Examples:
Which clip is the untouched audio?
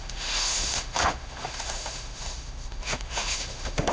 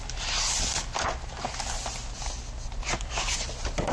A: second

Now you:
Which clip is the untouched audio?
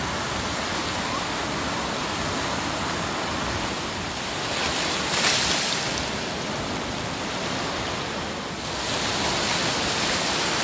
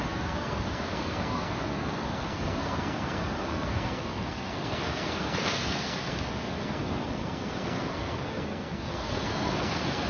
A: first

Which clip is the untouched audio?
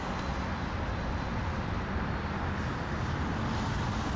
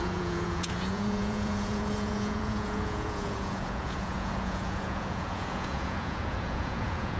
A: first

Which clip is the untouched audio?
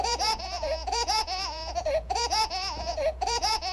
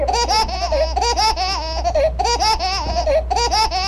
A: second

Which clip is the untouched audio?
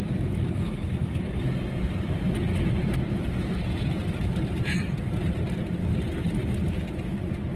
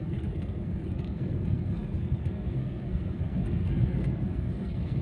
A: first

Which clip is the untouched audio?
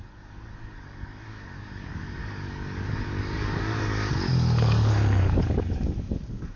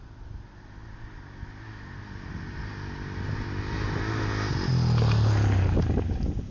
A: second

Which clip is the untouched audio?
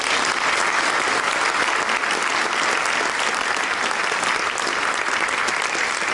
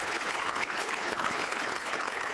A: first